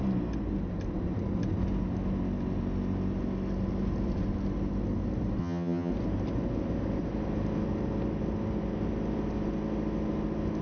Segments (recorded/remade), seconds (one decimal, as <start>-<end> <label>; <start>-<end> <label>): 0.0-5.4 recorded; 5.4-5.9 remade; 5.9-10.6 recorded